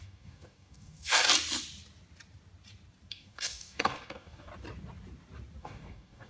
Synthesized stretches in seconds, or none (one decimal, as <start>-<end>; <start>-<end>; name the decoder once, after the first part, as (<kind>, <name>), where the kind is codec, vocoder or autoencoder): 0.0-1.2 (codec, DAC); 3.1-4.5; 5.6-6.3